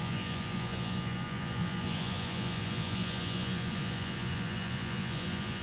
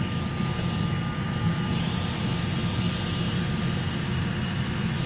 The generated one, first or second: first